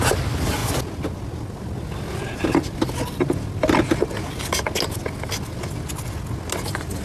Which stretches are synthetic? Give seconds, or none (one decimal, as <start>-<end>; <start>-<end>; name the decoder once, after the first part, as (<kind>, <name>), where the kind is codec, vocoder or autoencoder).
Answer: none